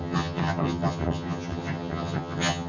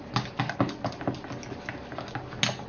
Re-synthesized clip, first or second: first